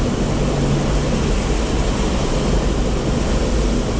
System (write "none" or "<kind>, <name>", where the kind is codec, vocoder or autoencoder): none